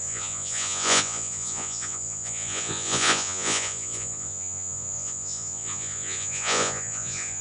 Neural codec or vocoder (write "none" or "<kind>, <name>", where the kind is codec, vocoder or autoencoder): vocoder, Vocos